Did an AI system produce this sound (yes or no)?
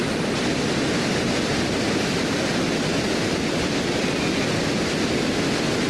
no